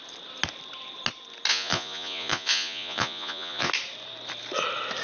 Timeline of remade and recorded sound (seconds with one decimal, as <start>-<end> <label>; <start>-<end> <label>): 0.0-1.5 recorded; 1.5-3.7 remade; 3.7-5.0 recorded